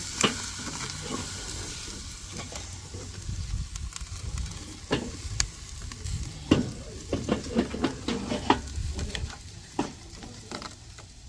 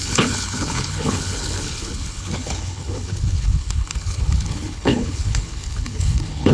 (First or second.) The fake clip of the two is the second